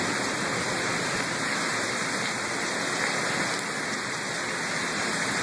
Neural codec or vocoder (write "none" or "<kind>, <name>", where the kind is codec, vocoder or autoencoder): none